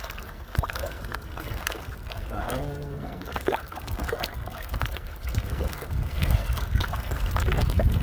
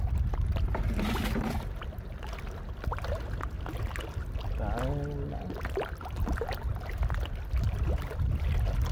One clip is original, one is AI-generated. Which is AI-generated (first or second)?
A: first